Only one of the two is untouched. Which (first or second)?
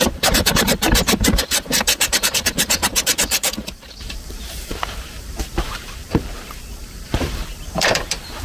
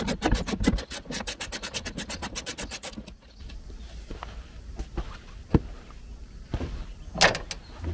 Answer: second